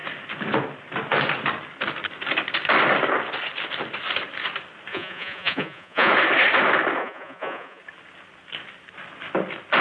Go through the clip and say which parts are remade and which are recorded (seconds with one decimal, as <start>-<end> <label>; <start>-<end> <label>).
0.0-4.9 recorded; 4.9-6.1 remade; 6.1-7.0 recorded; 7.0-7.8 remade; 7.8-9.8 recorded